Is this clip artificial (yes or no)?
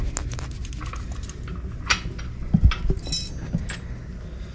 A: no